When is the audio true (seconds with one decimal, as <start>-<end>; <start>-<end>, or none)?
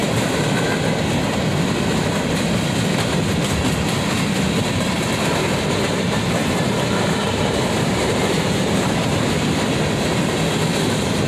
0.0-6.4; 8.9-11.3